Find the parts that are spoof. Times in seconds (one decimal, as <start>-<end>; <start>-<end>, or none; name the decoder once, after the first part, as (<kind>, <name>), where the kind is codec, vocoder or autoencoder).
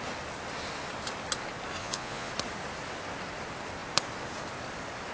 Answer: 1.8-2.3 (vocoder, Vocos)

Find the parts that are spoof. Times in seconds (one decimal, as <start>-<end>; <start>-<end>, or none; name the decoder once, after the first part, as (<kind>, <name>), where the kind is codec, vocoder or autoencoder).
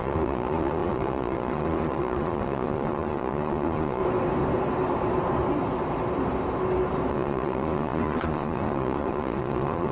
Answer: 0.0-4.0 (vocoder, Vocos); 7.1-9.9